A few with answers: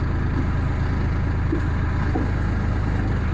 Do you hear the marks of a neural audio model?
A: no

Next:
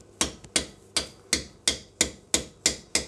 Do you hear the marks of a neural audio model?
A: no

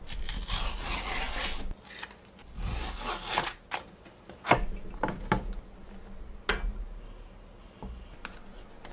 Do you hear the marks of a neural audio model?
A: no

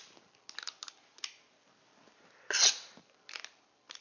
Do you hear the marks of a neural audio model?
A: no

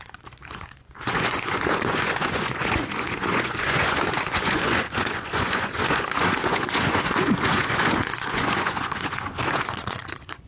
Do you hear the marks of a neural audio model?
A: yes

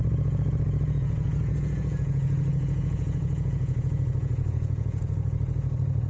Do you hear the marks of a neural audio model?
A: yes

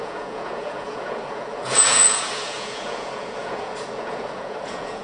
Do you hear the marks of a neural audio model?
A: yes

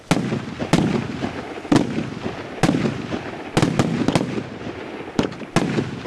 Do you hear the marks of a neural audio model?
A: no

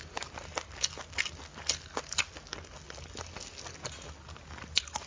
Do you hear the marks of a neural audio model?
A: no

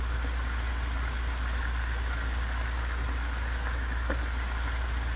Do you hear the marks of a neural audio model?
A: no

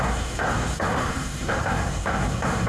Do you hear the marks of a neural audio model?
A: yes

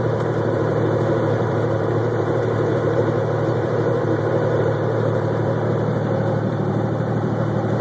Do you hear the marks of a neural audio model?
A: yes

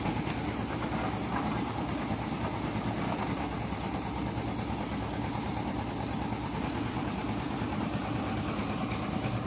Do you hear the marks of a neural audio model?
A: no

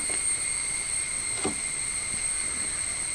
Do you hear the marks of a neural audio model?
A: no